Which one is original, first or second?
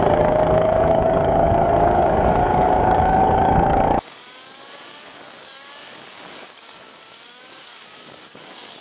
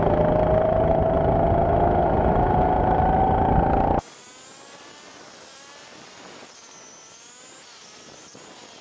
second